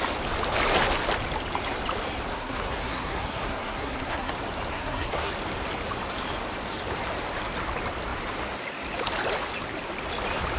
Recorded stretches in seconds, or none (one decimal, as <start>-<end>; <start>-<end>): 0.0-2.3; 4.3-4.7; 5.3-10.6